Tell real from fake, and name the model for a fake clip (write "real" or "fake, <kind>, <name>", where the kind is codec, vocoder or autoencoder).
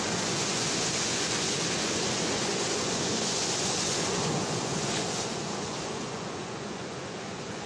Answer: fake, vocoder, Vocos